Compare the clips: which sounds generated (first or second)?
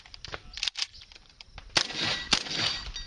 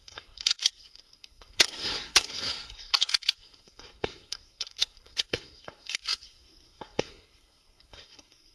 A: second